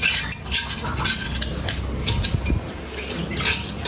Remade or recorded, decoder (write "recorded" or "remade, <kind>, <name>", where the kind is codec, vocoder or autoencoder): recorded